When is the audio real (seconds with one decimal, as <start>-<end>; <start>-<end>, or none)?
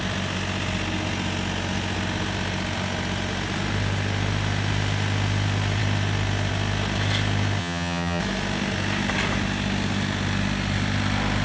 0.0-7.6; 8.2-11.4